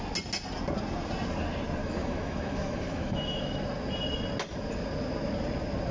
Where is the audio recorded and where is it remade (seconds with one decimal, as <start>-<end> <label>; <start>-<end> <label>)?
0.0-1.8 recorded; 1.8-3.6 remade; 3.6-5.9 recorded